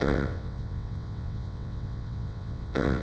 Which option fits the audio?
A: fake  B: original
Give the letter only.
A